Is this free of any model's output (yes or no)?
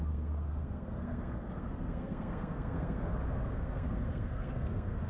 no